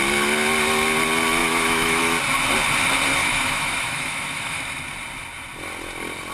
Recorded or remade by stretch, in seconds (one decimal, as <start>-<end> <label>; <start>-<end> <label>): 0.0-1.4 recorded; 1.4-2.0 remade; 2.0-3.2 recorded; 3.2-4.6 remade; 4.6-6.3 recorded